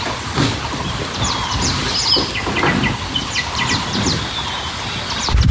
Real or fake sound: real